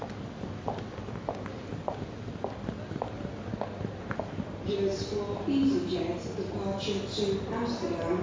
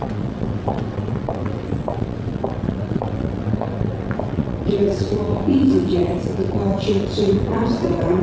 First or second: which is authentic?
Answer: first